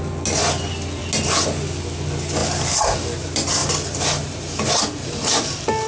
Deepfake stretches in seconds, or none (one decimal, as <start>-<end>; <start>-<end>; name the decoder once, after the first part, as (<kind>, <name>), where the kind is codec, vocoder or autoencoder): none